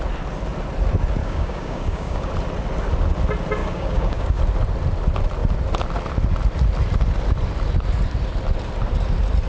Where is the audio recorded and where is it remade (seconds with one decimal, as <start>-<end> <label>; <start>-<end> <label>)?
0.0-1.2 recorded; 1.2-2.3 remade; 2.3-3.6 recorded; 3.6-4.4 remade; 4.4-9.5 recorded